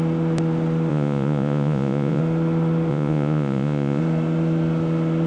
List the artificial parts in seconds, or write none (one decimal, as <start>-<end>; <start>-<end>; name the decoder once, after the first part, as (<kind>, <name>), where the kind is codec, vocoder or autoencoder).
0.9-2.2 (vocoder, Vocos); 2.9-4.0